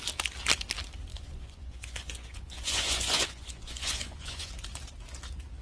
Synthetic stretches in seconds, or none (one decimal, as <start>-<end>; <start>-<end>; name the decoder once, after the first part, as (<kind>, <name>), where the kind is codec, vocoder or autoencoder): 1.1-4.5 (vocoder, Vocos)